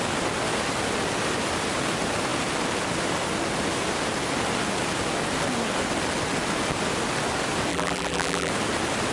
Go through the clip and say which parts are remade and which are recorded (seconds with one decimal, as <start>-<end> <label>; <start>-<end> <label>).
0.0-7.7 recorded; 7.7-8.5 remade; 8.5-9.1 recorded

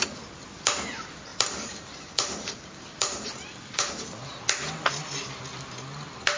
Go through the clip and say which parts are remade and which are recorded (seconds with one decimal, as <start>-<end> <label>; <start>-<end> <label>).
0.0-1.3 recorded; 1.3-3.9 remade; 3.9-6.4 recorded

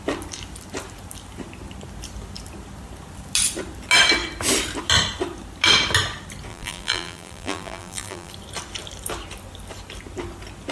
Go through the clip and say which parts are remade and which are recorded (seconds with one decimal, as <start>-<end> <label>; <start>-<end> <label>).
0.0-6.5 recorded; 6.5-8.3 remade; 8.3-10.7 recorded